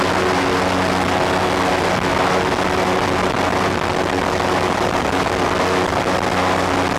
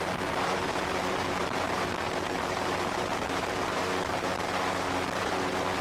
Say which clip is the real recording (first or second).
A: first